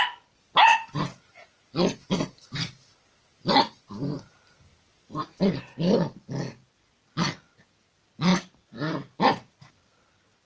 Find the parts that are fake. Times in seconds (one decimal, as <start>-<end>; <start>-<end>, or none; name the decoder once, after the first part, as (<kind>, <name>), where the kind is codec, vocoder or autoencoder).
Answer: 4.7-5.6 (vocoder, BigVGAN v2); 8.3-9.7